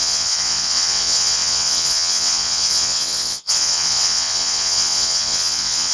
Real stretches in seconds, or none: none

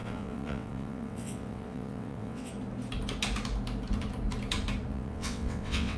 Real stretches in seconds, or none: 2.5-4.9

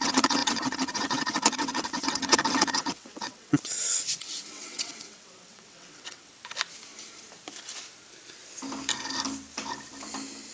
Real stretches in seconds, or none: 6.3-10.5